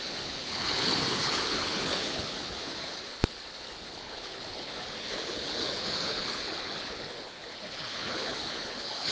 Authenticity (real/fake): fake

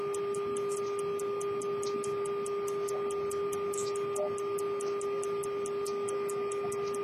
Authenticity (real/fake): real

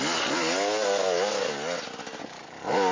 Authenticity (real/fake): real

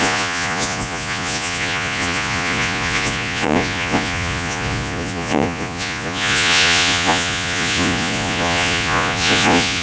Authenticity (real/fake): fake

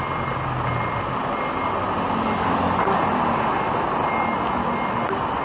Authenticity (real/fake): real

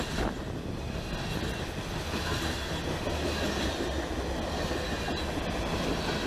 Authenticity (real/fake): real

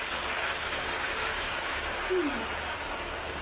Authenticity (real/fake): fake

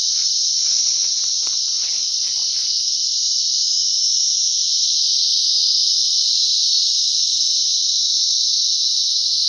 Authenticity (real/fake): real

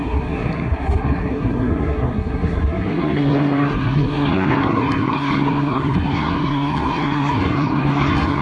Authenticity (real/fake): fake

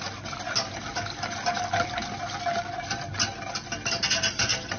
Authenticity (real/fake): real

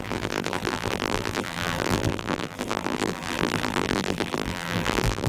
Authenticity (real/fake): fake